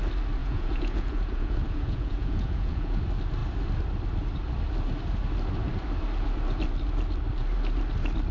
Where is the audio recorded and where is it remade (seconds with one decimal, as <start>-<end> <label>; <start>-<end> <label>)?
0.0-0.4 recorded; 0.4-3.0 remade; 3.0-8.3 recorded